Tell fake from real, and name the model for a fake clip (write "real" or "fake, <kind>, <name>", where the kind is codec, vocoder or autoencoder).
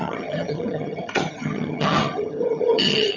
fake, vocoder, HiFi-GAN